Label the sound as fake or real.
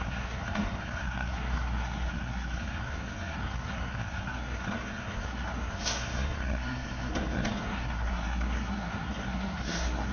fake